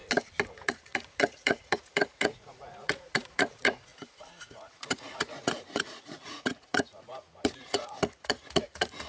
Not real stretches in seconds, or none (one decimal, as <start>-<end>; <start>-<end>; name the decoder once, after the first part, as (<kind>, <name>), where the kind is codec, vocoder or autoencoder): 0.5-3.9 (vocoder, Vocos); 4.5-9.1